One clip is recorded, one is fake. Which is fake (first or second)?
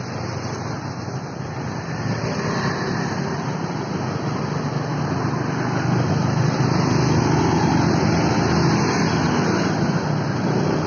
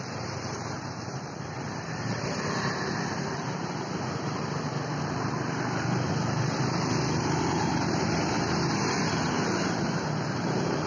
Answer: second